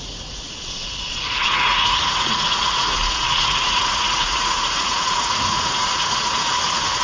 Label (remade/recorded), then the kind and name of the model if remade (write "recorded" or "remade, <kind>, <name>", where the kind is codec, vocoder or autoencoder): remade, vocoder, Vocos